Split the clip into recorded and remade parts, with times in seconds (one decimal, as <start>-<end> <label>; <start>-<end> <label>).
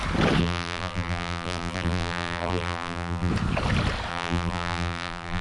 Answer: 0.0-0.4 recorded; 0.4-3.3 remade; 3.3-4.1 recorded; 4.1-5.4 remade